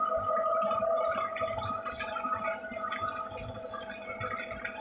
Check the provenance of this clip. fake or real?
real